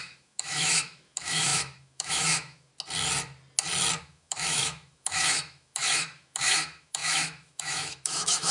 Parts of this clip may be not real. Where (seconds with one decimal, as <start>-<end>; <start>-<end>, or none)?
0.0-2.7; 4.0-8.5